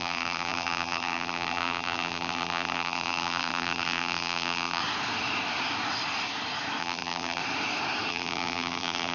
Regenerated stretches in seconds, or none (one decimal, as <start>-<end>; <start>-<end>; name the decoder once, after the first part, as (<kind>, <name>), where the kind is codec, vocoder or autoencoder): 0.0-4.8 (vocoder, BigVGAN v2); 6.8-7.4; 8.1-9.1